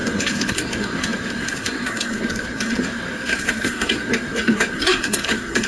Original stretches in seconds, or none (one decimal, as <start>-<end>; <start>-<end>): none